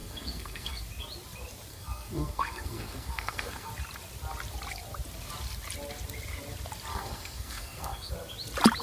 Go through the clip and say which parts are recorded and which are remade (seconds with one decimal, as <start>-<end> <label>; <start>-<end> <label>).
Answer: 0.0-0.8 remade; 0.8-1.7 recorded; 1.7-3.7 remade; 3.7-6.9 recorded; 6.9-8.1 remade; 8.1-8.8 recorded